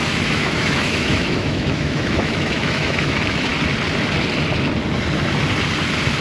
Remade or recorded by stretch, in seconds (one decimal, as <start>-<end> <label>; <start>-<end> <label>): 0.0-3.5 remade; 3.5-6.2 recorded

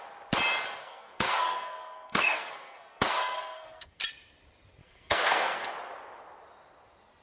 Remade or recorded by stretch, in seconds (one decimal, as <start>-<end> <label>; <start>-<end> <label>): 0.0-0.8 recorded; 0.8-4.0 remade; 4.0-4.8 recorded; 4.8-5.7 remade; 5.7-7.2 recorded